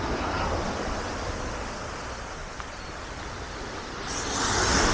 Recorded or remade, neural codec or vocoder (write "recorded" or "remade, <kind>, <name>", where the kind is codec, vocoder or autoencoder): recorded